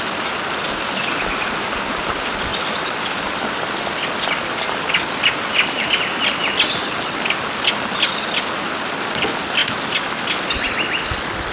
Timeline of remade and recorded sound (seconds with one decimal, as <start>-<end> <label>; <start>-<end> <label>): 0.0-11.5 recorded